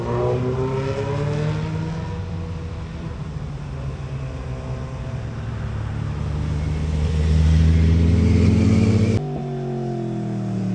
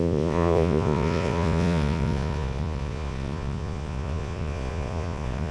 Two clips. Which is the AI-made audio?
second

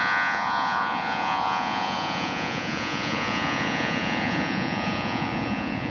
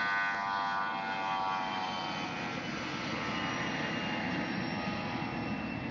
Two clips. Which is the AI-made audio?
first